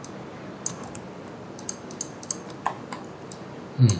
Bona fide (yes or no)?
yes